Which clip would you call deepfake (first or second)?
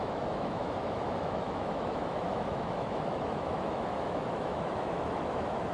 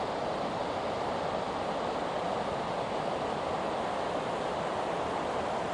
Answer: first